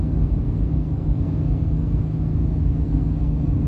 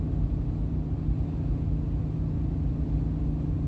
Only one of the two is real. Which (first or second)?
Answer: second